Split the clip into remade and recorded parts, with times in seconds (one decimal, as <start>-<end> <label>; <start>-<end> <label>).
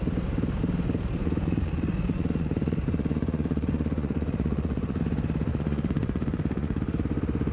0.0-1.2 recorded; 1.2-5.0 remade; 5.0-5.5 recorded; 5.5-6.8 remade; 6.8-7.5 recorded